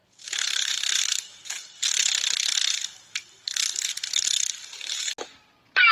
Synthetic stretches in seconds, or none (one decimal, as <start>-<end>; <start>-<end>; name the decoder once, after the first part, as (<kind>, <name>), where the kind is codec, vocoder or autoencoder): none